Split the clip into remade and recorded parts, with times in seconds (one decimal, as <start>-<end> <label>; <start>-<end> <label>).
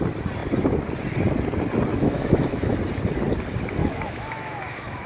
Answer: 0.0-1.9 recorded; 1.9-2.7 remade; 2.7-3.8 recorded; 3.8-5.1 remade